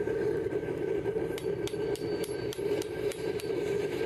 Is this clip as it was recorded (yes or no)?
no